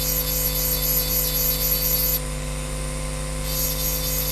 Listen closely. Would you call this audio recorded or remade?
recorded